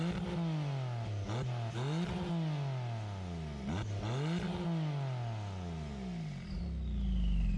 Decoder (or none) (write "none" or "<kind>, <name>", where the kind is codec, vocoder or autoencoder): none